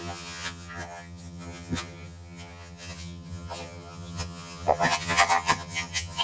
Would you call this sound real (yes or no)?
no